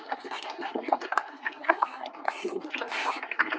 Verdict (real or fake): fake